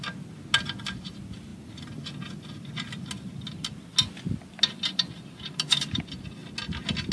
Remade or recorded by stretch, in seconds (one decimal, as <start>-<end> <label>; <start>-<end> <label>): 0.0-7.1 recorded

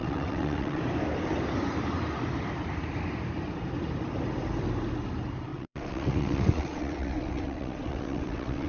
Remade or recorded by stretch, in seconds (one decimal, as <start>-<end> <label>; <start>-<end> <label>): 0.0-0.8 remade; 0.8-5.5 recorded; 5.5-8.7 remade

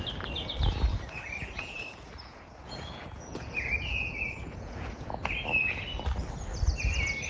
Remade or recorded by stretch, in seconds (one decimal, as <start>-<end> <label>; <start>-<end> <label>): 0.0-0.9 recorded; 0.9-5.3 remade; 5.3-7.3 recorded